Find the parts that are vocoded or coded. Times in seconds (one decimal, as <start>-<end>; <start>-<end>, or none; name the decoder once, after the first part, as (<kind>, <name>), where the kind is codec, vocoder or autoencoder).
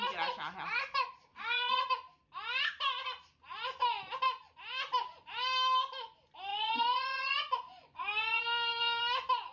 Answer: 1.3-1.9 (vocoder, Vocos); 6.5-9.0